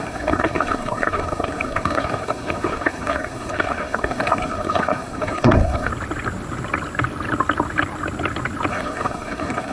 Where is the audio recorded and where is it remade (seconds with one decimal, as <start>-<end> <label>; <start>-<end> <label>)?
0.0-5.9 remade; 5.9-8.7 recorded; 8.7-9.7 remade